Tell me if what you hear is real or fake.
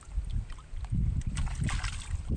real